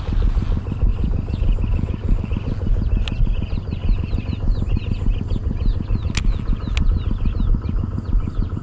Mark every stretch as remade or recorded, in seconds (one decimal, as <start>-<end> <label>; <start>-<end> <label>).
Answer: 0.0-8.6 recorded